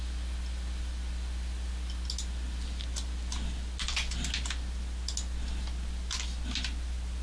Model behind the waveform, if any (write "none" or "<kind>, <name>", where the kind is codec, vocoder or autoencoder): none